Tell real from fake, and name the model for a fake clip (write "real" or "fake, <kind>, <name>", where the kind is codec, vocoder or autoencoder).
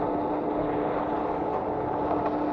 real